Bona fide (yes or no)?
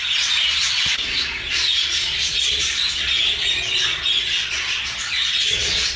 no